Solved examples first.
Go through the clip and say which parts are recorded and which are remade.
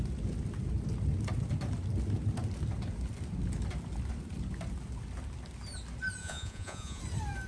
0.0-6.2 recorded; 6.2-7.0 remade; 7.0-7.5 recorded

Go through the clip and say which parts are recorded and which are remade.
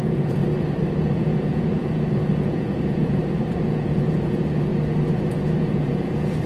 0.0-0.4 remade; 0.4-1.0 recorded; 1.0-4.7 remade; 4.7-5.3 recorded; 5.3-6.5 remade